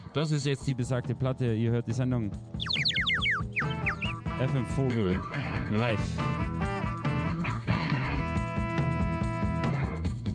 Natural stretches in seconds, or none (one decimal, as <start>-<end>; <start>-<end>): 0.7-4.9; 5.9-7.3; 8.2-9.7